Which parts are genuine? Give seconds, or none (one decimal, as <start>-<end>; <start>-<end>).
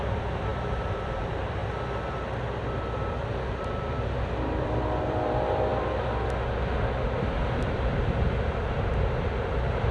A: 1.6-2.5; 5.7-8.7